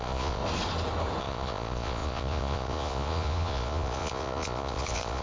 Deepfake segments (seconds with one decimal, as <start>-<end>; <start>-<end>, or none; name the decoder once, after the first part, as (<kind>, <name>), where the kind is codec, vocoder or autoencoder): 0.0-0.4 (vocoder, Vocos); 1.2-5.2